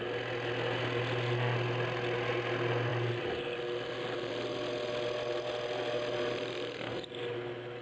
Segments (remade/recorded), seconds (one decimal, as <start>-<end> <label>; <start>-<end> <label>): 0.0-7.8 recorded